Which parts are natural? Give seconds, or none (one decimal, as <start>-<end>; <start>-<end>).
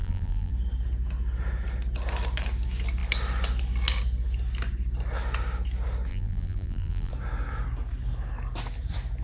0.5-6.1; 7.1-9.2